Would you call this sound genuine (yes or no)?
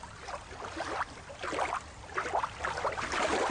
yes